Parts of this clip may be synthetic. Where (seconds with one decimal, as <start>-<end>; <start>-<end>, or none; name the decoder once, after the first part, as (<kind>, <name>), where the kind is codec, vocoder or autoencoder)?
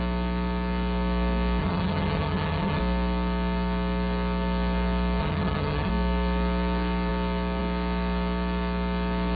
1.6-2.8 (vocoder, HiFi-GAN); 5.2-5.9